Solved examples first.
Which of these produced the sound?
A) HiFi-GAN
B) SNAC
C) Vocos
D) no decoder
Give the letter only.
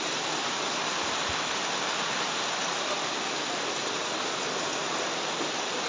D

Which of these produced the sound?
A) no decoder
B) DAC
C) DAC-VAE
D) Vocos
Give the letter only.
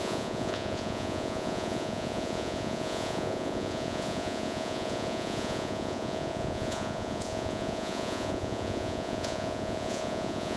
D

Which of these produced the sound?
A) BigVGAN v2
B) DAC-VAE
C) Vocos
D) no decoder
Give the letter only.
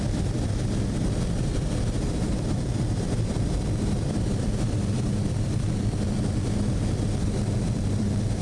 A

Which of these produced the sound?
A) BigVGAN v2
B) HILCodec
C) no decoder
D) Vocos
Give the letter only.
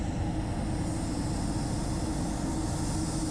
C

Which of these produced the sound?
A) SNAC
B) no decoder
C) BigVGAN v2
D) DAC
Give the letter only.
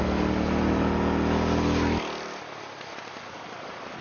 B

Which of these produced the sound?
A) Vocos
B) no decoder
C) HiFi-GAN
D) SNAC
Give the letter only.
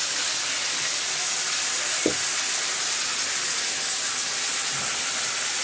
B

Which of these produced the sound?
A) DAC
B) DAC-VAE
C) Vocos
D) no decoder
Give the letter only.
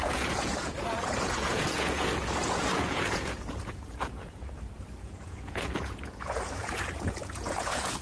C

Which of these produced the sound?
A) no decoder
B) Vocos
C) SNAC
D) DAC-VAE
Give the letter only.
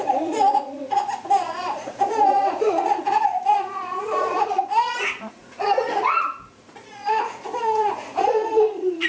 B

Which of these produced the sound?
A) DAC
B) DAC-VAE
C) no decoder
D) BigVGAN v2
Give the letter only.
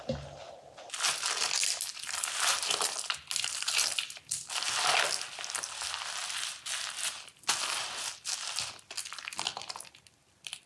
C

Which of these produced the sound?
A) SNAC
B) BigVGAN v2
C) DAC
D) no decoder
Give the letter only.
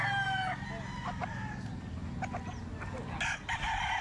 D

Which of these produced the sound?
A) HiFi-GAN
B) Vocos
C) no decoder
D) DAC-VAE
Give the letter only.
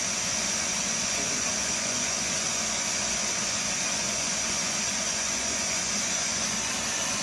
B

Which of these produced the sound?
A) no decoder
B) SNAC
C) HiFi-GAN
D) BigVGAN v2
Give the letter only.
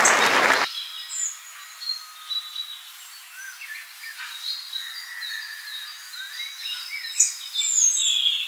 A